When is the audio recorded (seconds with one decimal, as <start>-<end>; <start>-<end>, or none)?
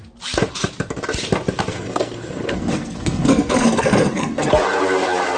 0.0-1.7; 4.5-5.4